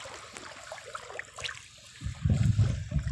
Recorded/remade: recorded